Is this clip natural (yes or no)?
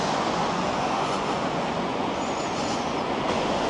no